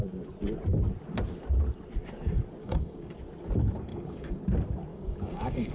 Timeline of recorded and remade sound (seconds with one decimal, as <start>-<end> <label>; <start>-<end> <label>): 0.0-2.6 recorded; 2.6-3.2 remade; 3.2-3.9 recorded; 3.9-4.4 remade; 4.4-4.9 recorded; 4.9-5.7 remade